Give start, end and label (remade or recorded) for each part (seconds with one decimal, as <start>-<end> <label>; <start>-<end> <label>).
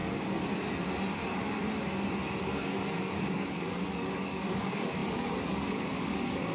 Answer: 0.0-2.4 recorded; 2.4-6.5 remade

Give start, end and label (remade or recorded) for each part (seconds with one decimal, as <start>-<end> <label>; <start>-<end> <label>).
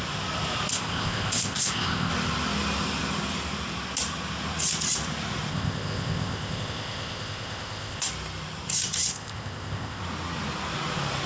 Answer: 0.0-0.7 recorded; 0.7-2.1 remade; 2.1-5.5 recorded; 5.5-8.1 remade; 8.1-9.1 recorded; 9.1-10.0 remade; 10.0-11.3 recorded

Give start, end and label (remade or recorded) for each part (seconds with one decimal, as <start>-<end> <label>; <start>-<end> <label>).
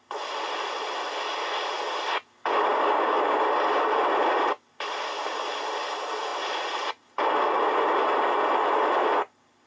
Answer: 0.0-9.7 recorded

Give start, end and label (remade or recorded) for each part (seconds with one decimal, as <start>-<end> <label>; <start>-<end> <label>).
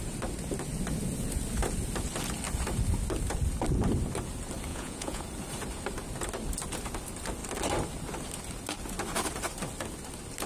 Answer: 0.0-4.7 recorded; 4.7-5.2 remade; 5.2-10.5 recorded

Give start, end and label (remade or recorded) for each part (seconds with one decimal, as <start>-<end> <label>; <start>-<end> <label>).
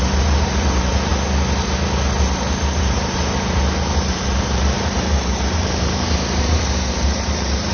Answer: 0.0-1.1 remade; 1.1-2.8 recorded; 2.8-7.7 remade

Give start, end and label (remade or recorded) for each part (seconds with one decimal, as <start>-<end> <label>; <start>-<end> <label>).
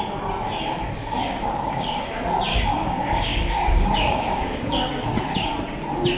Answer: 0.0-1.2 recorded; 1.2-2.1 remade; 2.1-2.5 recorded; 2.5-5.2 remade; 5.2-6.2 recorded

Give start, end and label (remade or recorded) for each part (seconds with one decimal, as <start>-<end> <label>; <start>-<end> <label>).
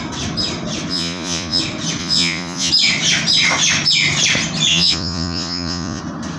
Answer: 0.0-0.9 recorded; 0.9-1.6 remade; 1.6-2.0 recorded; 2.0-2.7 remade; 2.7-4.7 recorded; 4.7-6.0 remade; 6.0-6.4 recorded